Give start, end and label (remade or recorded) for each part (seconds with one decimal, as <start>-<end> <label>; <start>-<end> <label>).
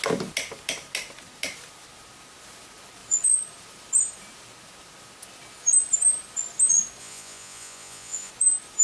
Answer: 0.0-7.0 recorded; 7.0-8.3 remade; 8.3-8.8 recorded